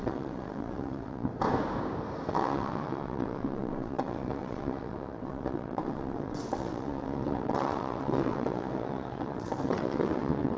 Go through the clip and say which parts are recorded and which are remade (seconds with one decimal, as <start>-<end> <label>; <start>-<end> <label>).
0.0-1.3 remade; 1.3-2.3 recorded; 2.3-10.6 remade